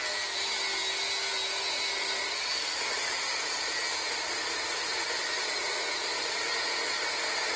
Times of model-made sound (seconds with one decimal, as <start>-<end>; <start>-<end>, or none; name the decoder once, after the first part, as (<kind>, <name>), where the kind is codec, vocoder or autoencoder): none